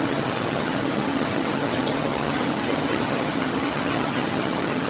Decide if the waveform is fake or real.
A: fake